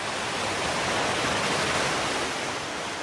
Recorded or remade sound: recorded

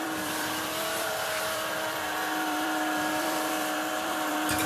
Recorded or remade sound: remade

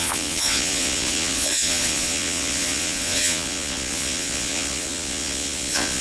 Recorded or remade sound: remade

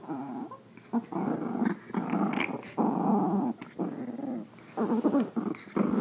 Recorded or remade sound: recorded